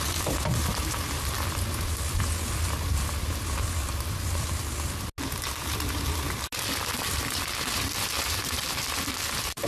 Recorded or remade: recorded